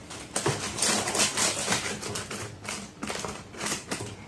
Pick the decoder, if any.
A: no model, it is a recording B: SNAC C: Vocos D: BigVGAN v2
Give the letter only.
A